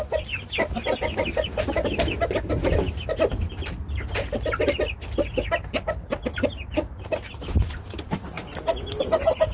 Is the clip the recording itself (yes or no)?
yes